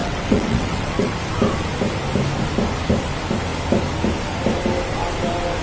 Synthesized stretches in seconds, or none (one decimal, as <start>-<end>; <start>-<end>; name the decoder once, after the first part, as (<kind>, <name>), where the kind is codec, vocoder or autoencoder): 0.0-1.1 (vocoder, WaveNeXt)